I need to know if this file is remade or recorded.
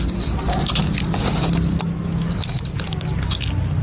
recorded